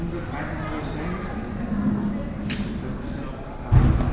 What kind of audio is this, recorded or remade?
recorded